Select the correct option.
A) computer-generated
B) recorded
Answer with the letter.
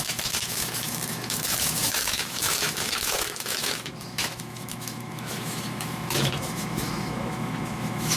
A